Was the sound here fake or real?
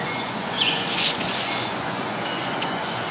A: fake